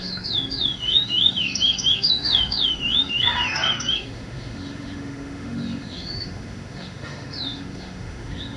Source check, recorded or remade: remade